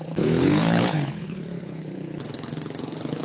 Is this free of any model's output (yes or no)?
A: no